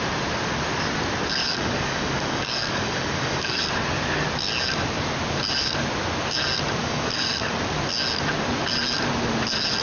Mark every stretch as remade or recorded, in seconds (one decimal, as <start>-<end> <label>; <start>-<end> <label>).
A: 0.0-1.4 recorded; 1.4-3.7 remade; 3.7-6.8 recorded; 6.8-7.5 remade; 7.5-9.8 recorded